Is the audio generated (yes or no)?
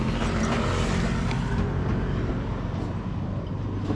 no